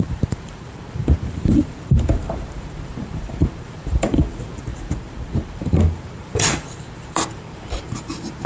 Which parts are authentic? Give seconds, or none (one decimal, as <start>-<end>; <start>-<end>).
none